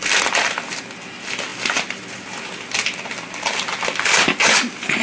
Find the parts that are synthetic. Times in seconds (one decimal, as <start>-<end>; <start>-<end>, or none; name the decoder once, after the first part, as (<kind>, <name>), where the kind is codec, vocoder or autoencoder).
none